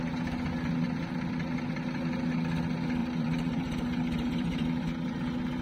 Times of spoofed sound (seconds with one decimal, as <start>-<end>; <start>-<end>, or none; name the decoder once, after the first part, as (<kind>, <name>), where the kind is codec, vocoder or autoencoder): 3.0-4.7 (vocoder, BigVGAN v2)